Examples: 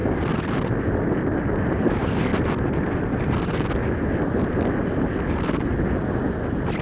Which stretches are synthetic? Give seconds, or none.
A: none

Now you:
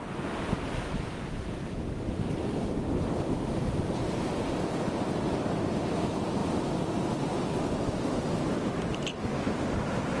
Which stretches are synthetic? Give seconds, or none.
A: none

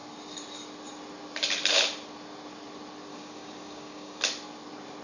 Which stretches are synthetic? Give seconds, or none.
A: 3.1-4.2 (codec, DAC)

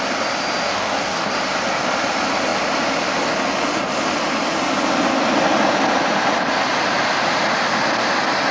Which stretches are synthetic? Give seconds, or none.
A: 0.7-1.3 (codec, DAC)